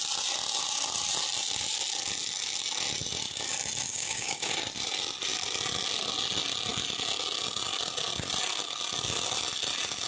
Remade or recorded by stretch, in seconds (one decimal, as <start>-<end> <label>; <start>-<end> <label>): 0.0-3.9 recorded; 3.9-4.5 remade; 4.5-10.1 recorded